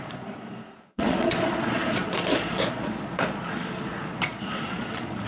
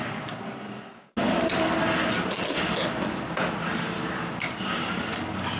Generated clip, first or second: first